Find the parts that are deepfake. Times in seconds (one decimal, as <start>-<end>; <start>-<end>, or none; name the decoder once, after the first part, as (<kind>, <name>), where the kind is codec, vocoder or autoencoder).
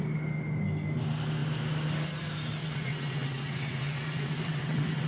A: 2.6-5.1 (vocoder, WaveNeXt)